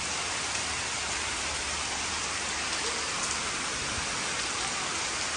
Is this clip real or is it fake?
real